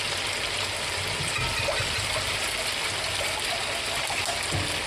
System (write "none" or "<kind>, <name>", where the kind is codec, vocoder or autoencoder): none